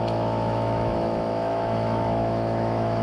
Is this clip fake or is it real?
fake